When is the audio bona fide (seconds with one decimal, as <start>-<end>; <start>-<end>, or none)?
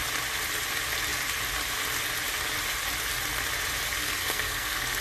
0.0-4.0